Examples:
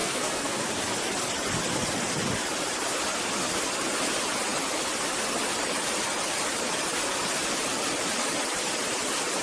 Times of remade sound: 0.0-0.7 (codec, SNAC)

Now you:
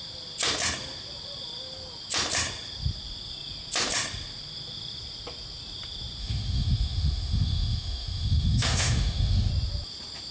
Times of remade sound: 6.2-9.5 (autoencoder, DAC-VAE)

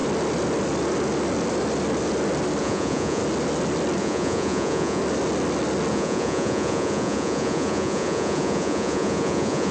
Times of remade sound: 2.6-3.2 (vocoder, Vocos); 4.0-5.0; 5.9-9.7

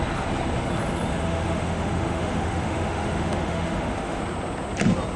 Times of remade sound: 1.1-4.2 (autoencoder, DAC-VAE)

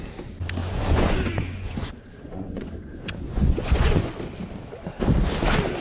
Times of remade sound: 0.6-4.1 (vocoder, Vocos)

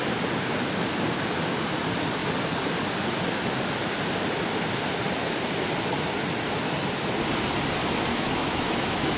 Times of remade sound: 8.1-9.2 (autoencoder, DAC-VAE)

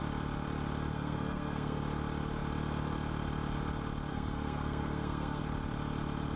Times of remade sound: 0.9-1.8 (codec, SNAC); 4.1-5.4